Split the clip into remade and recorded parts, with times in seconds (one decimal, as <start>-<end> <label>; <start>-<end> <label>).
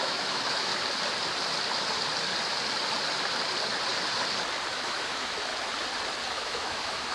0.0-0.7 remade; 0.7-4.7 recorded; 4.7-5.5 remade; 5.5-6.3 recorded; 6.3-7.1 remade